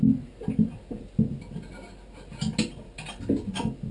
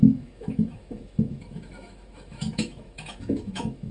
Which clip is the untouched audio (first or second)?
first